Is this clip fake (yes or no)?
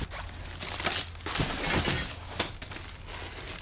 no